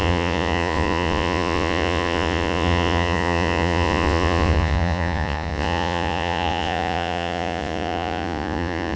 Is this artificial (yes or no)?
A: yes